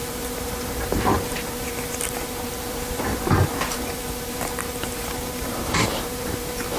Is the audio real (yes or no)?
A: no